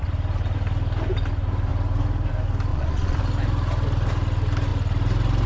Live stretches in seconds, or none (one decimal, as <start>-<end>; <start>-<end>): 0.0-2.7; 3.2-5.5